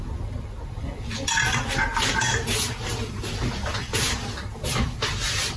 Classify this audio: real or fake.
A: real